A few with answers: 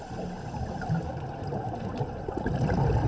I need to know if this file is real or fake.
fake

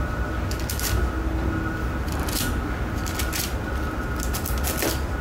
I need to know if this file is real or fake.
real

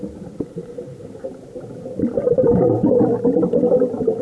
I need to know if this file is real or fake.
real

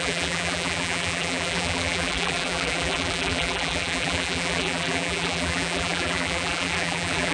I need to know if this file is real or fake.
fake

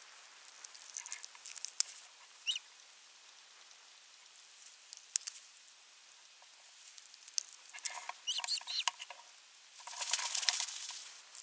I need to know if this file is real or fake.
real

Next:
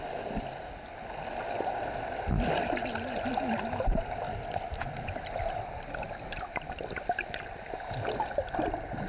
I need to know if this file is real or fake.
real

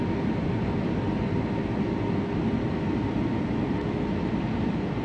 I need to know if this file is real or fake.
real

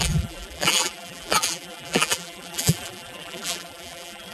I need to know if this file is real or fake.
fake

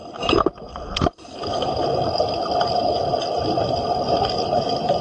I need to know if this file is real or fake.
real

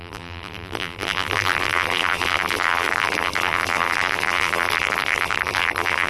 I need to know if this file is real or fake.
fake